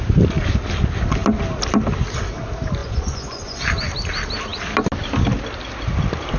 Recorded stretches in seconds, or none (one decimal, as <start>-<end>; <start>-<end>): 0.0-2.8; 3.6-6.4